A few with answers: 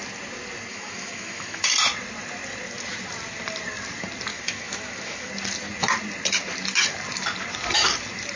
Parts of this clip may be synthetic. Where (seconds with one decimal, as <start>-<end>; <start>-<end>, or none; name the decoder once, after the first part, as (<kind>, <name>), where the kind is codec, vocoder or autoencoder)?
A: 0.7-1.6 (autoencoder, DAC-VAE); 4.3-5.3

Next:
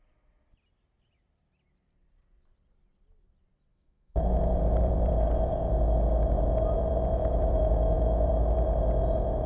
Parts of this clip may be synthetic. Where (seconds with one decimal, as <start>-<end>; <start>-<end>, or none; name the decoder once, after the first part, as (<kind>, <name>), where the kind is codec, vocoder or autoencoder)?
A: 3.7-4.8 (autoencoder, DAC-VAE); 7.2-8.3

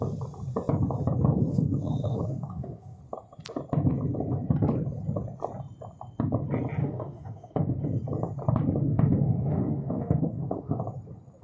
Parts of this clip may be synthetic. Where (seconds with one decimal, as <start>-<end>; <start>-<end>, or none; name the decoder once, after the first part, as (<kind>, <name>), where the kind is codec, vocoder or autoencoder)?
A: 1.5-3.0 (autoencoder, DAC-VAE); 6.8-7.8; 8.8-10.8